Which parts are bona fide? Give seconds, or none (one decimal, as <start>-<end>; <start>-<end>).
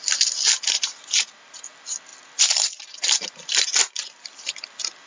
0.0-5.1